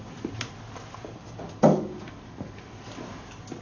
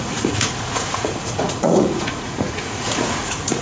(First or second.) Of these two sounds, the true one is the first